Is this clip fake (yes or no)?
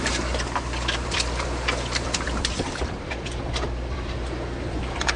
yes